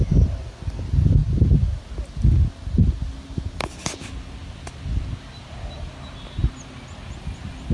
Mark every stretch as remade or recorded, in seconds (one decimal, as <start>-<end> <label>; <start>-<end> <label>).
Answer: 0.0-7.7 recorded